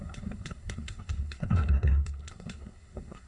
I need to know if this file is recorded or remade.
remade